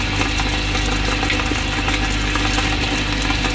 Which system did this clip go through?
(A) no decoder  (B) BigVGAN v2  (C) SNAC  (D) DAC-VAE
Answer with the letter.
A